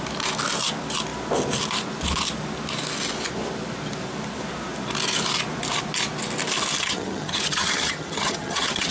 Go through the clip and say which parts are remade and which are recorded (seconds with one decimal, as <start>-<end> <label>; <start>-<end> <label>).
0.0-6.8 recorded; 6.8-8.9 remade